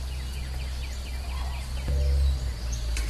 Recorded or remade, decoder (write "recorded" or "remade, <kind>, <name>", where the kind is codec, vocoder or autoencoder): recorded